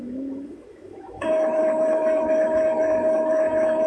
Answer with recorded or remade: remade